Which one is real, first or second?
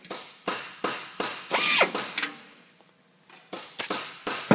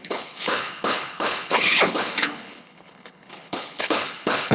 first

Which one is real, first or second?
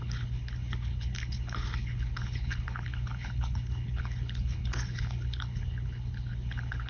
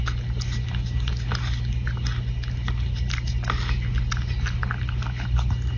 second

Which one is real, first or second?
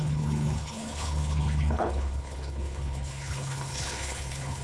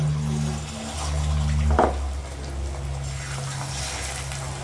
second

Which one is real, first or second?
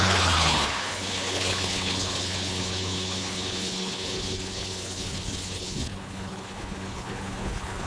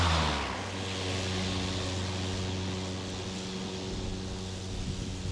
second